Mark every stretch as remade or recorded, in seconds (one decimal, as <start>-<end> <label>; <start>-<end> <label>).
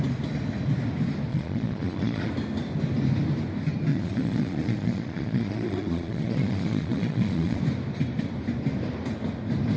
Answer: 0.0-1.3 recorded; 1.3-2.3 remade; 2.3-3.9 recorded; 3.9-7.6 remade; 7.6-9.8 recorded